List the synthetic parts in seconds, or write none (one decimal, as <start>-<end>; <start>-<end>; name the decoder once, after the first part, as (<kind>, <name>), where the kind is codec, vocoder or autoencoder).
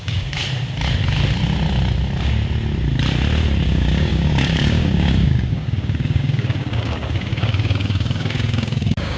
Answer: 0.0-0.4 (codec, DAC); 3.6-9.2